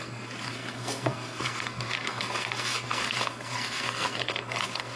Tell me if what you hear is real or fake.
fake